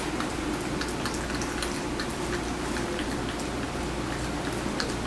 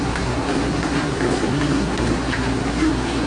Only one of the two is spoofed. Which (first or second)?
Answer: second